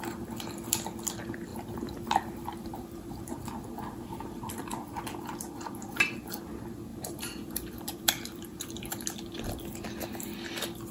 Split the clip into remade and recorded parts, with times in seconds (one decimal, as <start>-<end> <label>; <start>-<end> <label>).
0.0-1.5 recorded; 1.5-3.2 remade; 3.2-6.9 recorded; 6.9-8.9 remade; 8.9-10.9 recorded